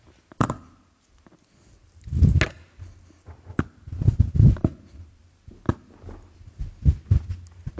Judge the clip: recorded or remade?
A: recorded